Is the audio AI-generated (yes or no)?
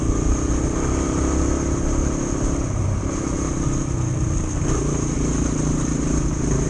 no